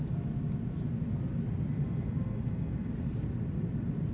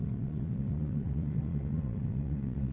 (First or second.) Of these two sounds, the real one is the first